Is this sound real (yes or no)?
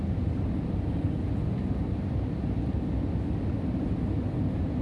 yes